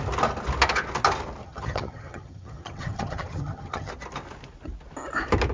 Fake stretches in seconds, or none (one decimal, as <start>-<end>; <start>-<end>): 1.4-3.9